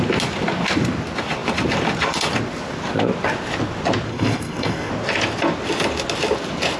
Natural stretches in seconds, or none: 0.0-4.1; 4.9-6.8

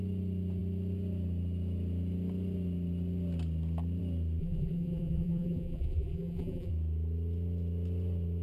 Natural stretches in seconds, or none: 0.0-4.4; 6.7-8.4

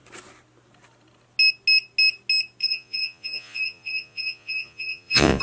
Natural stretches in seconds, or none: 0.0-2.6

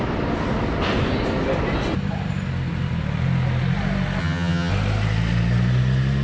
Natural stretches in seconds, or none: 0.0-4.2; 4.7-6.2

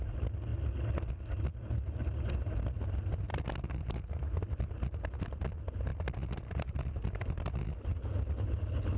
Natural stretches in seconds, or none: 0.0-3.3; 4.4-5.9; 7.6-9.0